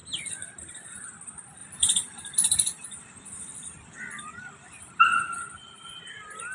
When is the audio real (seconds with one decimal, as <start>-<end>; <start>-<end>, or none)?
0.0-1.6; 5.0-6.5